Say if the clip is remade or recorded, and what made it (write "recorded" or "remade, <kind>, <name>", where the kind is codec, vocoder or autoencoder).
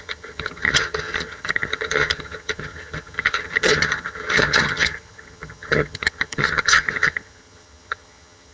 remade, vocoder, HiFi-GAN